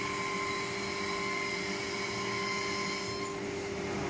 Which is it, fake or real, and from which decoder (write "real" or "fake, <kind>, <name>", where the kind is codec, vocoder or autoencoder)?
real